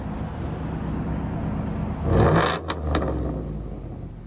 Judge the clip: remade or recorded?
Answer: recorded